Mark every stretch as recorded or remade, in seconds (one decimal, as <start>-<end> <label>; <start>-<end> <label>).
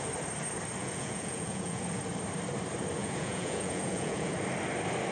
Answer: 0.0-0.8 recorded; 0.8-1.8 remade; 1.8-3.0 recorded; 3.0-4.3 remade; 4.3-5.1 recorded